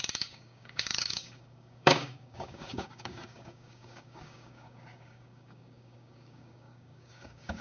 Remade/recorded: remade